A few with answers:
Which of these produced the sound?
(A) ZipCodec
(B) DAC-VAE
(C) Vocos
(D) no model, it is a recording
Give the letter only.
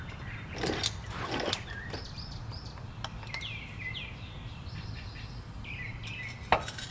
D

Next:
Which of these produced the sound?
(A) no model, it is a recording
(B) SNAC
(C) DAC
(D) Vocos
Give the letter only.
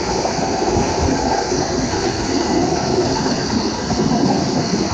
B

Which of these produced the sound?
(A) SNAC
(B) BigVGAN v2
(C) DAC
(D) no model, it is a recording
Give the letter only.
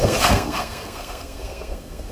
A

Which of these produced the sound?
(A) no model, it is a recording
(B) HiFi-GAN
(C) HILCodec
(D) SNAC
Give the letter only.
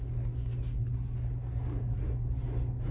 A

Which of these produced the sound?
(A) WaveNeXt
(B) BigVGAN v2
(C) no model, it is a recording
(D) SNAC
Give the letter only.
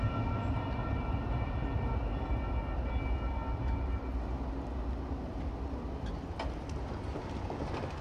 C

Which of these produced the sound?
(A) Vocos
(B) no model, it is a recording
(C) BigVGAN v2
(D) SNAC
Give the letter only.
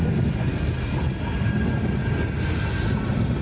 B